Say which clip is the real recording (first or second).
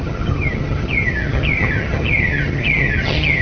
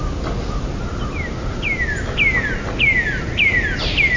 second